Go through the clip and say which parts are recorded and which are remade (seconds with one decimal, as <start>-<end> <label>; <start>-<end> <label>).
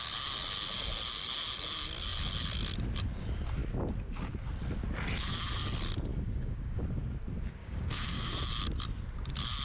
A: 0.0-6.1 recorded; 6.1-6.8 remade; 6.8-7.6 recorded; 7.6-8.3 remade; 8.3-9.6 recorded